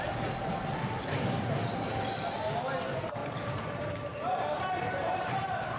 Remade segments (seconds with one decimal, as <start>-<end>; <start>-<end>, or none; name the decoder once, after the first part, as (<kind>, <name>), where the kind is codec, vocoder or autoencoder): 3.2-5.8 (vocoder, BigVGAN v2)

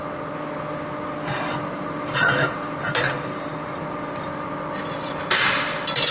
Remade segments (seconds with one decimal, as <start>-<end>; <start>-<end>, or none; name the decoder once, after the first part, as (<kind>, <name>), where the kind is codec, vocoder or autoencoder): none